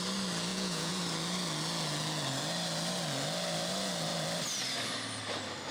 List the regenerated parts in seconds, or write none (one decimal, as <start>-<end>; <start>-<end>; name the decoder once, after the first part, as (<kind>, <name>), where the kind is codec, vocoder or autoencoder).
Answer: 0.5-1.0 (vocoder, Vocos)